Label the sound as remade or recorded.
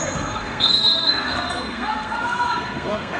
remade